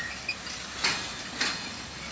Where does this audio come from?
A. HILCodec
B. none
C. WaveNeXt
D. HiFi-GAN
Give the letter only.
B